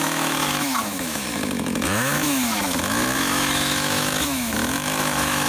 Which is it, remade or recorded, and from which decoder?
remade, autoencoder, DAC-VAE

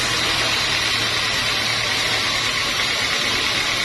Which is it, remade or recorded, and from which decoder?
recorded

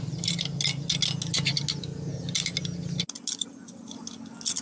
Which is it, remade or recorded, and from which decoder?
recorded